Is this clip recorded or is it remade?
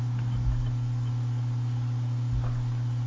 recorded